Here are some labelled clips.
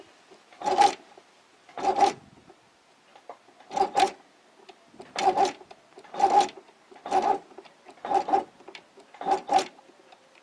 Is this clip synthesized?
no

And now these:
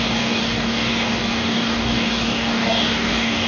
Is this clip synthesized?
yes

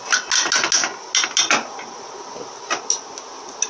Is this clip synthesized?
no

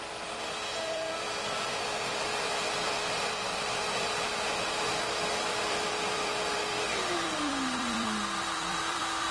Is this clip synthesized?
yes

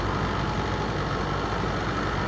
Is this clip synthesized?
no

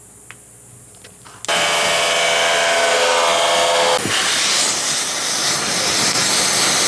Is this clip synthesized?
no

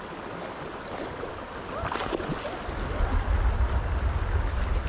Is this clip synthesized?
no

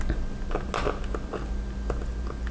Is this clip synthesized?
no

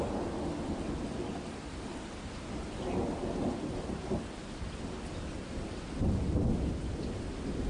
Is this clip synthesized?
no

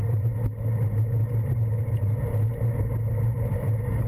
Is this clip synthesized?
yes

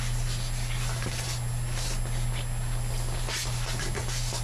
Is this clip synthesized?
no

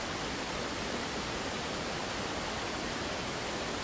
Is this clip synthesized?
no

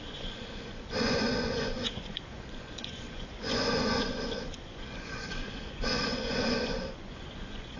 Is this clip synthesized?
yes